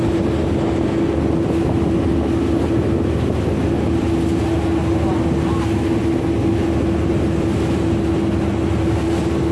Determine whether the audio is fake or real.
real